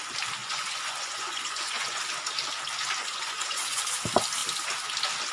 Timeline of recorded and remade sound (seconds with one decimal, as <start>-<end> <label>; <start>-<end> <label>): 0.0-0.4 recorded; 0.4-2.0 remade; 2.0-3.0 recorded; 3.0-3.8 remade; 3.8-5.3 recorded